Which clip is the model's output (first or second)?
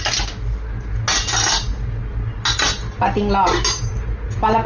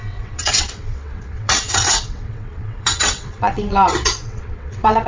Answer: second